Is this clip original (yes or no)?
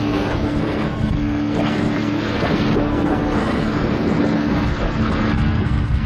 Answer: no